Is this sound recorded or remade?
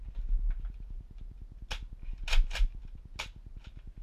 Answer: recorded